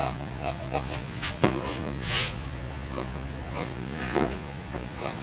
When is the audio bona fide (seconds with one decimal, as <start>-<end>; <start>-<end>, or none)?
none